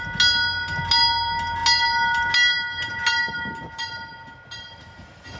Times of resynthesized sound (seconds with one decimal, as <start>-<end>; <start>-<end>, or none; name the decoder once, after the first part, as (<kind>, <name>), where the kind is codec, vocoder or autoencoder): none